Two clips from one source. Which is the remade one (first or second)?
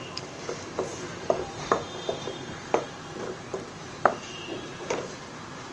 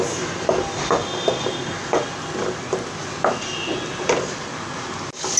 first